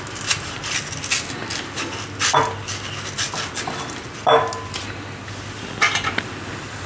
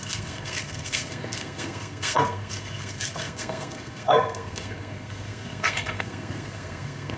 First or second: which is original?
first